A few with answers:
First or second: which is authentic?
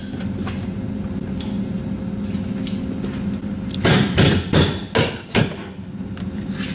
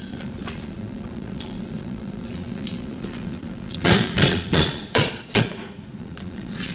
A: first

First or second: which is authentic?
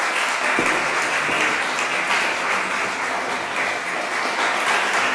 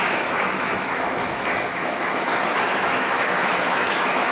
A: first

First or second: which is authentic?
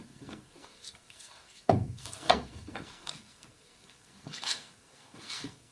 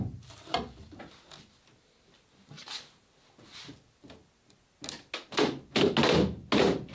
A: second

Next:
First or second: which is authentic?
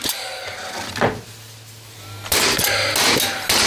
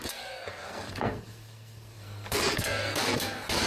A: first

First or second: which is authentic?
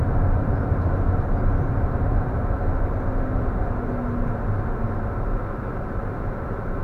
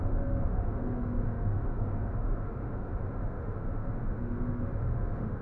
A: first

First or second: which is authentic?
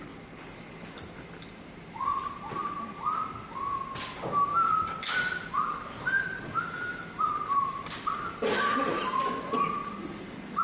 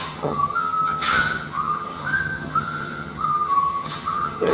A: first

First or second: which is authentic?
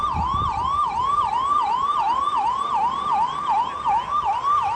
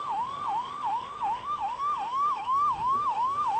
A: first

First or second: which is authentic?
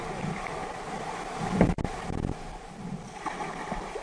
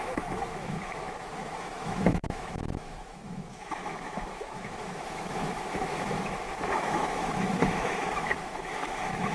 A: first